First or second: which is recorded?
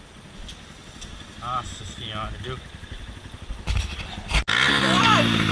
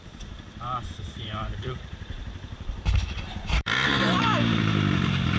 first